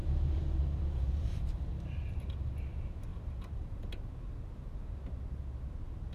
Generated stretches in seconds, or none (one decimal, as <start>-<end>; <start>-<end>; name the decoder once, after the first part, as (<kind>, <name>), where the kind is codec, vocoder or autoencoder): 0.0-1.7 (vocoder, BigVGAN v2); 3.1-3.8